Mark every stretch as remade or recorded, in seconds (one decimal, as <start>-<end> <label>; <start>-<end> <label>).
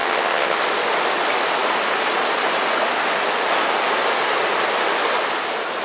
0.0-0.6 remade; 0.6-5.8 recorded